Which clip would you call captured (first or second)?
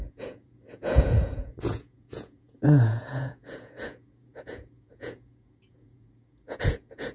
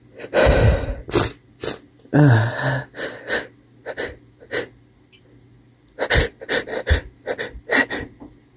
second